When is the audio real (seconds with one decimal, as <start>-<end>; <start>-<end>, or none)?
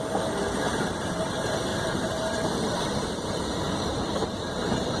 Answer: 0.0-0.5